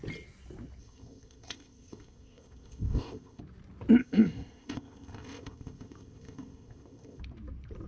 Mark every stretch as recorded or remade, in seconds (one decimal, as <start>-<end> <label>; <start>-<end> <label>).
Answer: 0.0-0.8 recorded; 0.8-3.4 remade; 3.4-4.0 recorded; 4.0-7.2 remade; 7.2-7.9 recorded